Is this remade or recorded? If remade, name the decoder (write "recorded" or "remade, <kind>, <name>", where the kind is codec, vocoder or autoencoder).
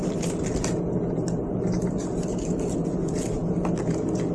recorded